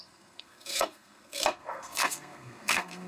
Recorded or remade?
remade